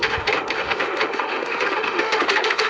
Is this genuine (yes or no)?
no